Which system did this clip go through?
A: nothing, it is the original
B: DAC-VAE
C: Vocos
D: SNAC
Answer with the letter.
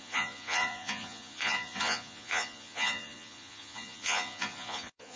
C